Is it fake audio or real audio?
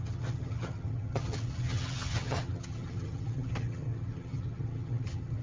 fake